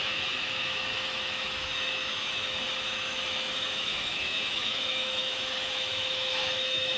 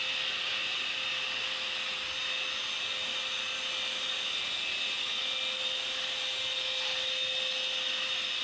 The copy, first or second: first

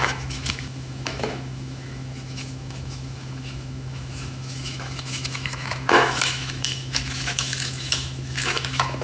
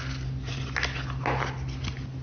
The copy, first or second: first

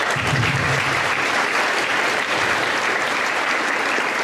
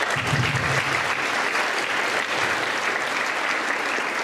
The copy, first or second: first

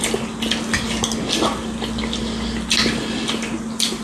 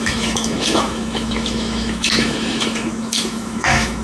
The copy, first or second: second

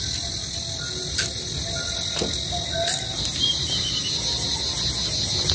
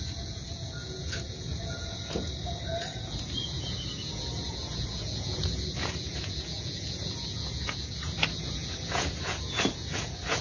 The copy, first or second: second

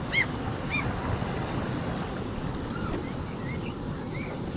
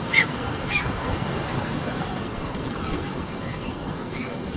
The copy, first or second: second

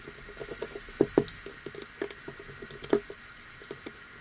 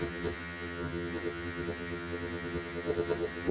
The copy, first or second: second